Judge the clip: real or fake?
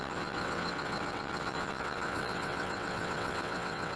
fake